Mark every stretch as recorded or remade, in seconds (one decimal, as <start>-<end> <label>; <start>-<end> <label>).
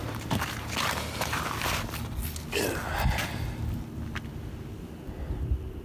0.0-5.8 recorded